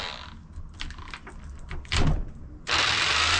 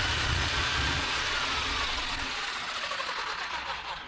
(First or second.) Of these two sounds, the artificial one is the second